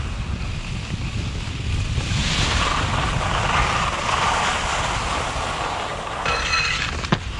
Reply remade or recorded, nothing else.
recorded